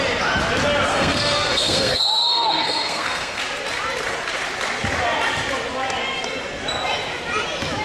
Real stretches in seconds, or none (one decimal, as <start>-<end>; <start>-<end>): 0.0-0.9; 3.4-7.8